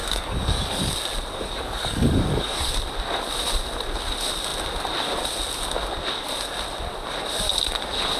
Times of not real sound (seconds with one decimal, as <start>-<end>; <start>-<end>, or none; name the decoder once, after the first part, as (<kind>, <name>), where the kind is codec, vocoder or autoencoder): 0.0-0.9 (codec, DAC); 1.3-2.7